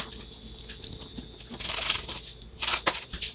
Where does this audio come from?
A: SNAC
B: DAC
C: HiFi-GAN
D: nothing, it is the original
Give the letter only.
D